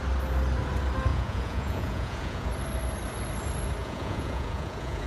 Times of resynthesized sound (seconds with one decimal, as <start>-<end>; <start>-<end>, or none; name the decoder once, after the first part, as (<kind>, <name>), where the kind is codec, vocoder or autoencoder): 1.1-2.5 (vocoder, Vocos); 3.8-5.1